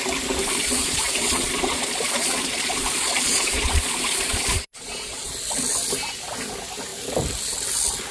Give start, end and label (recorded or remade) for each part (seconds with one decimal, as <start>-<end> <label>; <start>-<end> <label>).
0.0-0.4 recorded; 0.4-5.3 remade; 5.3-8.1 recorded